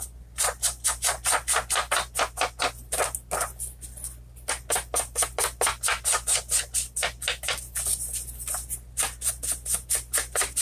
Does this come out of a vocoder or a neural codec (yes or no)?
no